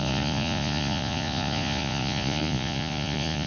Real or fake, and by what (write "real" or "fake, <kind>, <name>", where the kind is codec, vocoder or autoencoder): fake, vocoder, Vocos